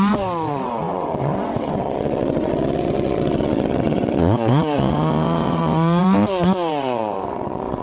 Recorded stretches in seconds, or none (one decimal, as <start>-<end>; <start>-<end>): none

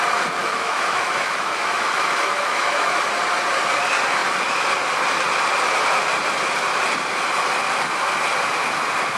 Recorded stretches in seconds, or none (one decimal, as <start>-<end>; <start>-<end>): 0.0-0.4; 3.0-9.2

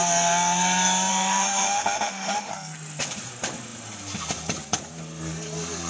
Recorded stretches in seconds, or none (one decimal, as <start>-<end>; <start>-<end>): 0.0-1.1; 2.5-5.9